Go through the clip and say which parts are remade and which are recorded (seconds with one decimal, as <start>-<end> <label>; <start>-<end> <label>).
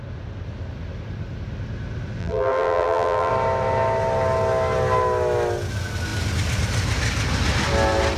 0.0-2.2 recorded; 2.2-3.3 remade; 3.3-8.2 recorded